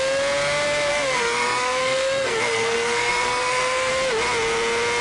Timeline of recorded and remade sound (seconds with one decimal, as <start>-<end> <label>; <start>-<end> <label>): 0.0-0.9 recorded; 0.9-3.9 remade; 3.9-5.0 recorded